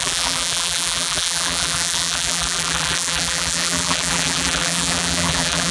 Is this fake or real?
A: fake